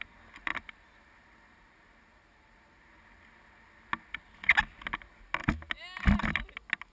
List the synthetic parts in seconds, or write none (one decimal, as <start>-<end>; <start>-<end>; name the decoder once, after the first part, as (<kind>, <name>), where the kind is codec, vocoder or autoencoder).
none